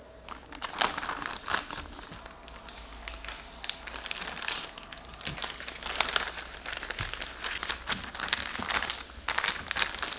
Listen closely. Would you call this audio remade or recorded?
recorded